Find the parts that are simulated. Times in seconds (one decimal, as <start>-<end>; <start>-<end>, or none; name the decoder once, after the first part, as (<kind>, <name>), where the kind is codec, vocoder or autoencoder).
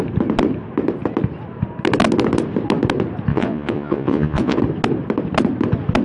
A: 3.3-4.6 (vocoder, Vocos)